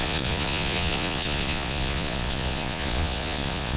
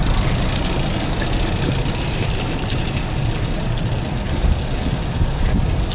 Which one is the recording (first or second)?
second